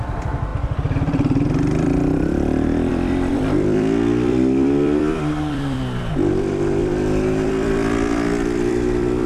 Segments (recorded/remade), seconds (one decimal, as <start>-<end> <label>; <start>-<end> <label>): 0.0-9.3 remade